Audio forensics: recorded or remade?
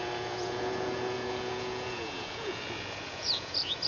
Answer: remade